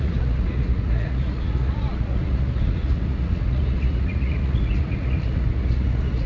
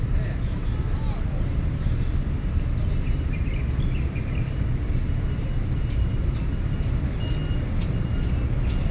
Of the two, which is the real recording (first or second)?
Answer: second